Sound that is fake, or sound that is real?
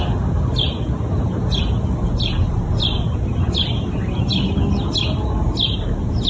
real